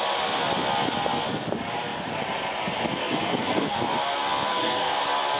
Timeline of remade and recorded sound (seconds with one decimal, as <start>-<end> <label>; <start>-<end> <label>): 0.0-3.0 recorded; 3.0-3.8 remade; 3.8-4.5 recorded; 4.5-5.0 remade; 5.0-5.4 recorded